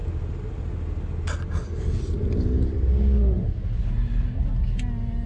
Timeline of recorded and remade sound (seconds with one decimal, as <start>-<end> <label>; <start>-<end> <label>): 0.0-5.3 recorded